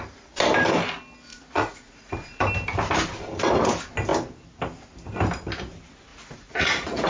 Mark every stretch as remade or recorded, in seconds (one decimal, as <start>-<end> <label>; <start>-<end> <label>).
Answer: 0.0-1.3 recorded; 1.3-2.4 remade; 2.4-6.1 recorded; 6.1-7.1 remade